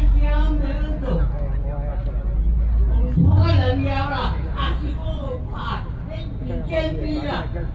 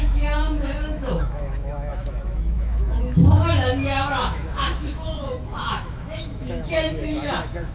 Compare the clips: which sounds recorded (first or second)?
first